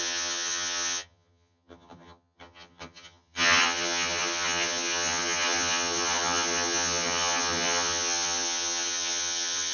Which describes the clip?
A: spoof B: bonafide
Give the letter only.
A